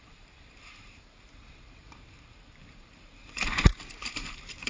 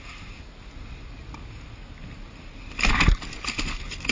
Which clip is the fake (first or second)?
first